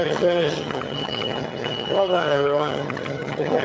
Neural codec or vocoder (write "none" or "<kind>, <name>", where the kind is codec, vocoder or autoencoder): vocoder, HiFi-GAN